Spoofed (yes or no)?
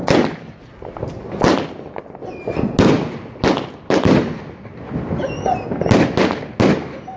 no